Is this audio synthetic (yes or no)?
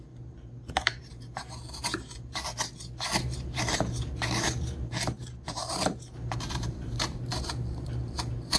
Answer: yes